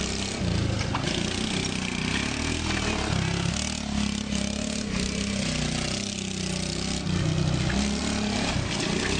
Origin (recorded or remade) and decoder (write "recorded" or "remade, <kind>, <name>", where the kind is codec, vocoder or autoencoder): recorded